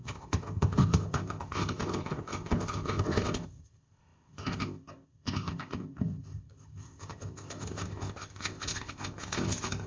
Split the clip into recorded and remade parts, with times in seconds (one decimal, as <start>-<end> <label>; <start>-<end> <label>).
0.0-9.9 remade